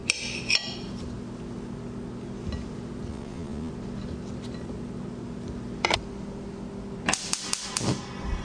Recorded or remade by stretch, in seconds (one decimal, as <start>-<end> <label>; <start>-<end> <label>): 0.0-3.1 recorded; 3.1-3.7 remade; 3.7-8.4 recorded